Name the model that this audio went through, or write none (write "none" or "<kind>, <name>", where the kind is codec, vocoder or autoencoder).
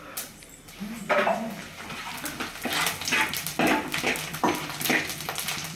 none